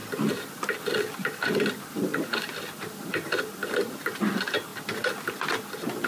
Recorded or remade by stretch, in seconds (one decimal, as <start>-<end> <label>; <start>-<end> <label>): 0.0-6.1 recorded